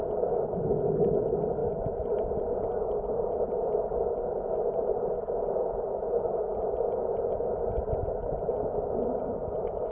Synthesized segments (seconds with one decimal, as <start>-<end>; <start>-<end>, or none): none